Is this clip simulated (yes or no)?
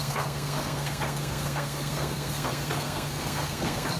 yes